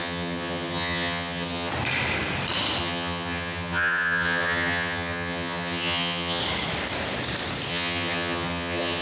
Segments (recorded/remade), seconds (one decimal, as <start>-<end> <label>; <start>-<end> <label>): 0.0-1.7 remade; 1.7-2.8 recorded; 2.8-6.4 remade; 6.4-7.7 recorded; 7.7-9.0 remade